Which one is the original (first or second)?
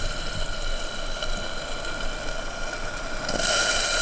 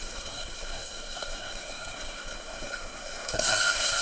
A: first